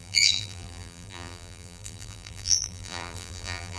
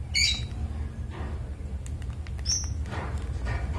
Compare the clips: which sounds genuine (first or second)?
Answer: second